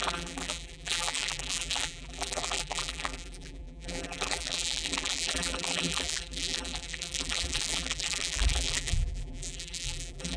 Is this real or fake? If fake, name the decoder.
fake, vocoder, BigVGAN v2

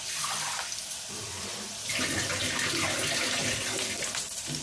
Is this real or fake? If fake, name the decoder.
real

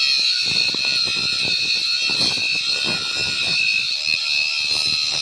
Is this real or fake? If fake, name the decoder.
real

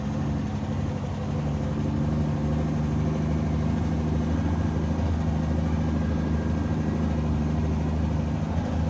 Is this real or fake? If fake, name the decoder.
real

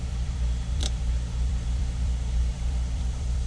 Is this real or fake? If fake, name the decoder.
fake, vocoder, BigVGAN v2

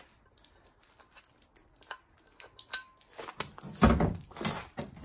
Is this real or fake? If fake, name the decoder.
real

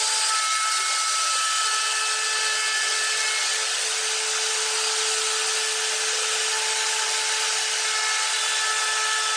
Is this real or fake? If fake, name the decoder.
real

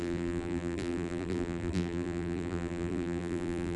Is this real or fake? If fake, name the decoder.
fake, vocoder, BigVGAN v2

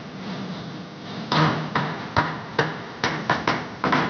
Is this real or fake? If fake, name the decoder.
real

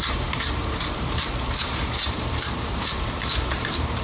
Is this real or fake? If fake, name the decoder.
fake, vocoder, BigVGAN v2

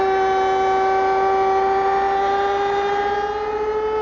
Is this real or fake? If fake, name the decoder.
real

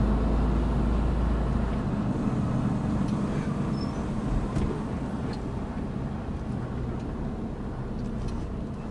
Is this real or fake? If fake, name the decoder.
real